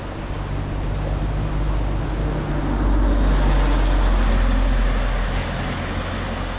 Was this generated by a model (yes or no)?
no